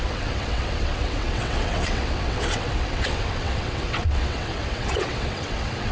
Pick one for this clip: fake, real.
fake